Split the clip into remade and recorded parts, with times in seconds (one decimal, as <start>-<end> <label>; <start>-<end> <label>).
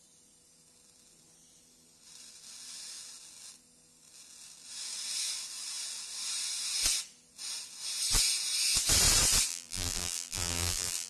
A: 0.0-9.5 recorded; 9.5-11.1 remade